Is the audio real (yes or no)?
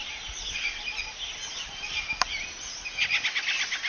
yes